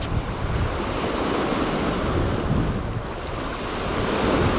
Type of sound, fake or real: real